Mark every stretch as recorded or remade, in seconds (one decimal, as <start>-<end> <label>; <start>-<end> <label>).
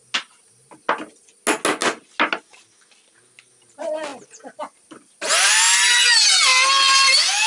0.0-7.5 recorded